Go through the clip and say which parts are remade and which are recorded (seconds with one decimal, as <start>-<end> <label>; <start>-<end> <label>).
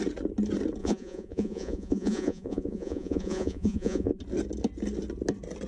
0.0-0.8 recorded; 0.8-4.2 remade; 4.2-5.7 recorded